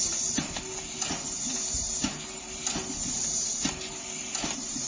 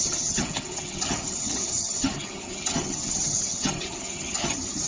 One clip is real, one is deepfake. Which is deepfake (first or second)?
second